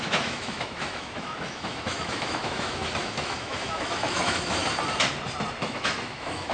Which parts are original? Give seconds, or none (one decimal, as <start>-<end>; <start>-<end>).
4.6-5.6